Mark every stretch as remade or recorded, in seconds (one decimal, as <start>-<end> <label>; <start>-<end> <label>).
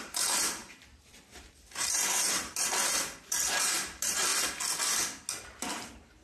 0.0-4.3 remade; 4.3-5.6 recorded; 5.6-6.2 remade